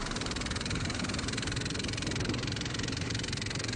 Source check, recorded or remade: remade